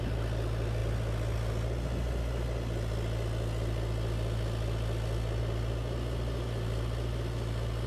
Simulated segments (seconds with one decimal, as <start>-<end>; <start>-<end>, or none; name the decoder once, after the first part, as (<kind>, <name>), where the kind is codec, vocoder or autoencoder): none